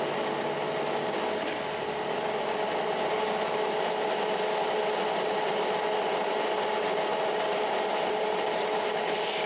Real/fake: real